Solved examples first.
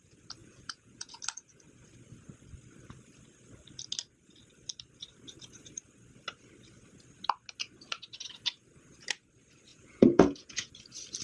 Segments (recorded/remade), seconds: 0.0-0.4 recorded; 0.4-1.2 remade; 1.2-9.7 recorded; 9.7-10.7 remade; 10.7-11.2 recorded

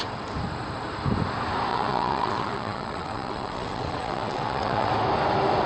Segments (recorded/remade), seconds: 0.0-1.7 recorded; 1.7-4.9 remade; 4.9-5.7 recorded

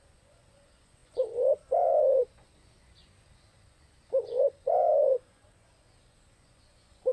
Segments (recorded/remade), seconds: 0.0-7.1 remade

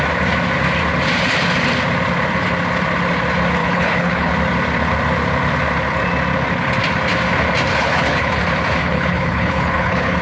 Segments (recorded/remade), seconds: 0.0-3.6 recorded; 3.6-4.3 remade; 4.3-7.7 recorded; 7.7-8.4 remade; 8.4-8.8 recorded; 8.8-10.2 remade

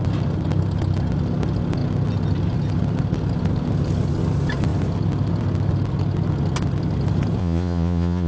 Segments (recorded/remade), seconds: 0.0-7.4 recorded; 7.4-8.3 remade

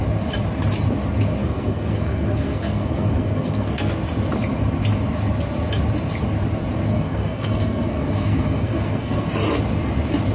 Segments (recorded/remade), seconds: 0.0-1.4 recorded; 1.4-3.9 remade; 3.9-6.9 recorded; 6.9-9.3 remade; 9.3-10.3 recorded